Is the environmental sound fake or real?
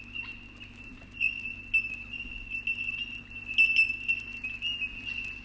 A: real